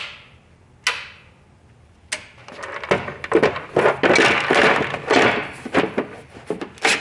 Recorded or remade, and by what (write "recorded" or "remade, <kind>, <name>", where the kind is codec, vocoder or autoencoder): recorded